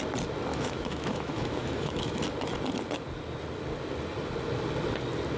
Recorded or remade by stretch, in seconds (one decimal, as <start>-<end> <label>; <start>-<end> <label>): 0.0-0.5 recorded; 0.5-2.2 remade; 2.2-5.4 recorded